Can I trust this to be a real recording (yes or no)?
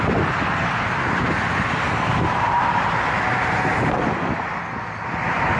yes